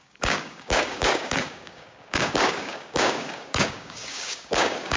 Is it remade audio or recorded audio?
remade